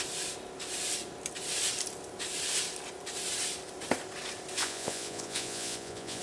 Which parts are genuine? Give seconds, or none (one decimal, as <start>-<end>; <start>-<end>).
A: 0.0-4.6